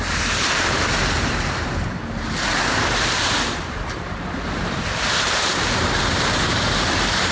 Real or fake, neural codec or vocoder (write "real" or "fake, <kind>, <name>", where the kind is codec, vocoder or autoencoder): fake, vocoder, BigVGAN v2